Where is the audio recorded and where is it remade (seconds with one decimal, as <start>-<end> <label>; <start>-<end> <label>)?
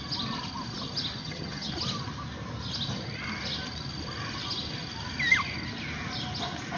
0.0-1.2 recorded; 1.2-1.7 remade; 1.7-6.8 recorded